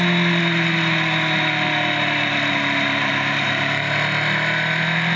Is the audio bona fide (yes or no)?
yes